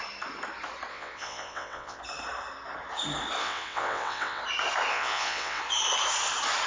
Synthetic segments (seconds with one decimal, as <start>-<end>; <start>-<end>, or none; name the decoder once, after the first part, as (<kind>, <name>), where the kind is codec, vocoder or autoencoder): 0.9-2.0 (vocoder, WaveNeXt); 3.4-4.4; 4.9-5.6